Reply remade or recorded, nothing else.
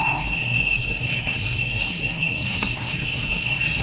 remade